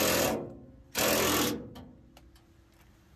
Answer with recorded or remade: recorded